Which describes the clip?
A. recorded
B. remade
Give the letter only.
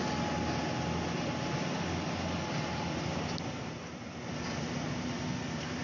A